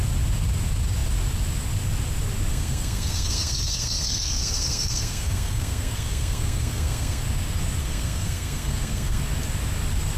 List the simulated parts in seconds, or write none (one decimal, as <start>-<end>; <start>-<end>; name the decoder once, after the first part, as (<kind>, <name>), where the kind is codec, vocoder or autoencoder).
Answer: 2.5-7.2 (codec, SNAC); 7.8-9.2